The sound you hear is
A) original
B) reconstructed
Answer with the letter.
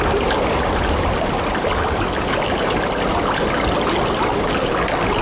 A